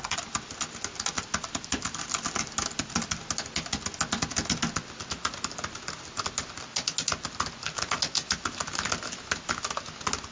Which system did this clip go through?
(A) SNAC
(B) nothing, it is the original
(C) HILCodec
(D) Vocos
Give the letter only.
B